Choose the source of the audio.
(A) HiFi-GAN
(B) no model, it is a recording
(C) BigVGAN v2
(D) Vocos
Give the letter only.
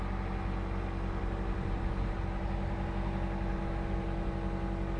B